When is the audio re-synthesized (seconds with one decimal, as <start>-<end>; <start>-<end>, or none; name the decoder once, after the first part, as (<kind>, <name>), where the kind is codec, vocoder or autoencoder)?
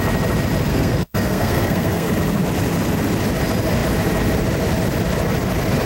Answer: 0.7-2.1 (codec, SNAC)